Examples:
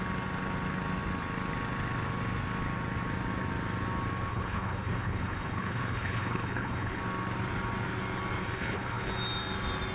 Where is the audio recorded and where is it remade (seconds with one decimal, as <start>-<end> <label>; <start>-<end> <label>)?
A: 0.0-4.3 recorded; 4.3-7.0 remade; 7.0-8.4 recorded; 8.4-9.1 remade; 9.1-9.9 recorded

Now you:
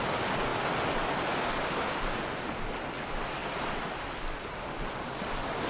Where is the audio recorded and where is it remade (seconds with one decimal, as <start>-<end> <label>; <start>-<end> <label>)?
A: 0.0-5.7 recorded

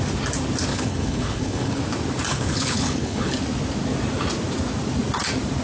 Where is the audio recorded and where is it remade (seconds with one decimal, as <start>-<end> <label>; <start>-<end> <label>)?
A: 0.0-0.7 recorded; 0.7-1.8 remade; 1.8-2.3 recorded; 2.3-3.3 remade; 3.3-5.6 recorded

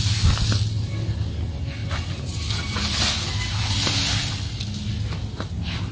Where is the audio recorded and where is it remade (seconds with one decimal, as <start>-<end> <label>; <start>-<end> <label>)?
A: 0.0-5.9 recorded